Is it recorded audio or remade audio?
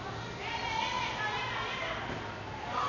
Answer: recorded